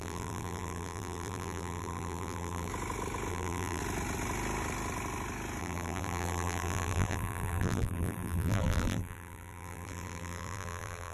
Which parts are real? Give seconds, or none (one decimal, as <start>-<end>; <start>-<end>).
2.7-3.3; 3.8-5.6